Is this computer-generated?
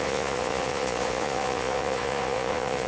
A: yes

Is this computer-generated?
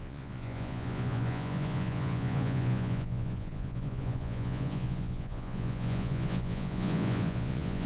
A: yes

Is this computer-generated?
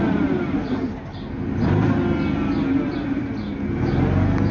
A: no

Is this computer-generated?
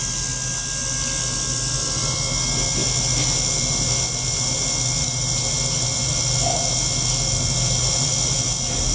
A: no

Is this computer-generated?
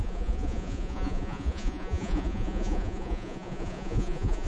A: yes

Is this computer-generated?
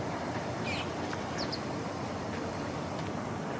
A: no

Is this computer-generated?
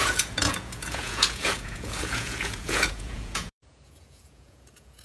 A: yes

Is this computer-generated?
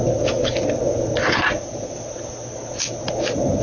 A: no